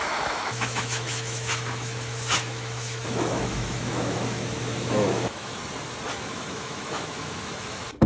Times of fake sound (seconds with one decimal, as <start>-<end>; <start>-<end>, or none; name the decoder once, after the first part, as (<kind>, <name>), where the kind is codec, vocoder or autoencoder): 0.0-5.6 (autoencoder, DAC-VAE); 6.2-8.1